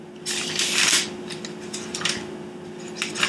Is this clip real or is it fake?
real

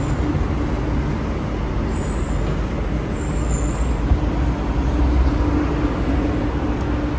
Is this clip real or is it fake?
real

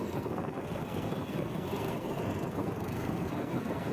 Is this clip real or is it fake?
fake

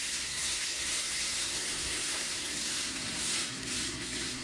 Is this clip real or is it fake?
fake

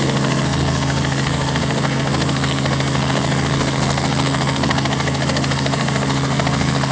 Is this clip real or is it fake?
fake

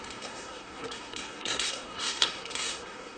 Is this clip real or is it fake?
fake